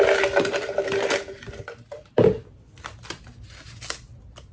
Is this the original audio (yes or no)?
yes